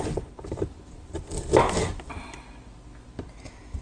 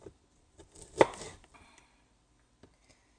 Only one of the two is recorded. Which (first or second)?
first